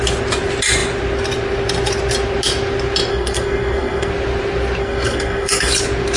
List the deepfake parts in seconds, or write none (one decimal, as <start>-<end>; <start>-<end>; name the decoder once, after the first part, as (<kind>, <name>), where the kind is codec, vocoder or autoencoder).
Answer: 3.1-4.1 (codec, SNAC); 4.8-5.7